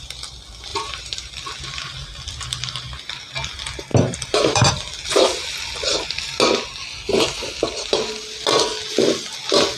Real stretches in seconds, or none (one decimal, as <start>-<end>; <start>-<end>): 0.0-0.7; 1.3-3.9; 4.7-9.8